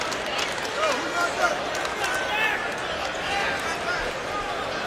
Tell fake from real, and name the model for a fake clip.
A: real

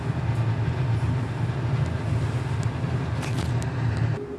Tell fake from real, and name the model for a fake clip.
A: real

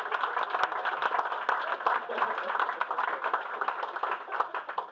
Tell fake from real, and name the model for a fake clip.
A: real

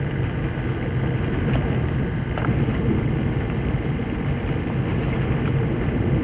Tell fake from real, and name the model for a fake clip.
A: fake, vocoder, BigVGAN v2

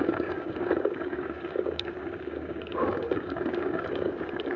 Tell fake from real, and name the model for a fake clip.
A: fake, codec, DAC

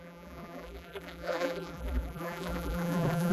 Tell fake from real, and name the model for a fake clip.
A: fake, vocoder, BigVGAN v2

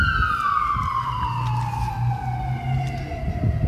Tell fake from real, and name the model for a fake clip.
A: real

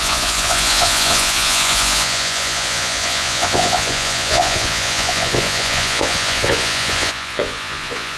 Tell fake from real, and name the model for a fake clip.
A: fake, vocoder, Vocos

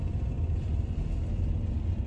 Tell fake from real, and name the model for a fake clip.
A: real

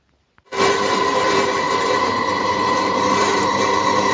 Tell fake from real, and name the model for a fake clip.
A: fake, vocoder, BigVGAN v2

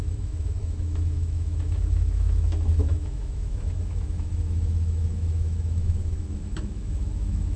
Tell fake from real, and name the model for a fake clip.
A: fake, autoencoder, DAC-VAE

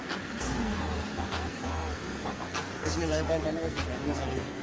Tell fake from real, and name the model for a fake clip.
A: fake, codec, SNAC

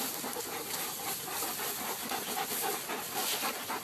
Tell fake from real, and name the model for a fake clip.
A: real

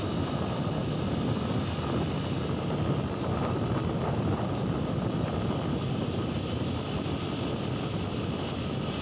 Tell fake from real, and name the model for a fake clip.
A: real